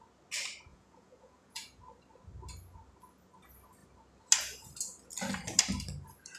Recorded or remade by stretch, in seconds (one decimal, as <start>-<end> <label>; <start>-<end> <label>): 0.0-0.7 recorded; 0.7-1.8 remade; 1.8-6.4 recorded